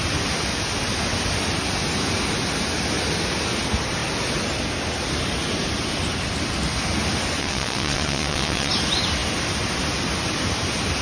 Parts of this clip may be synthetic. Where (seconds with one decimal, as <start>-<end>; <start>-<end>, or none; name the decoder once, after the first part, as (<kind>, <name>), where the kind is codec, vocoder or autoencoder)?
7.4-8.7 (vocoder, WaveNeXt)